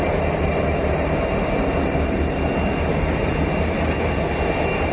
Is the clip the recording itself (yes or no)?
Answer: yes